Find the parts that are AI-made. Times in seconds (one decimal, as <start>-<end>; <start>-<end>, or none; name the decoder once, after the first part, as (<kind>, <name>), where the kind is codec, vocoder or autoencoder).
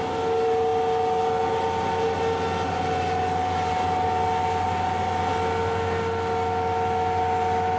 none